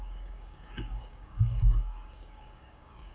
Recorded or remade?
remade